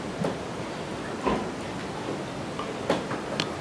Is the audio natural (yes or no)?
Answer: yes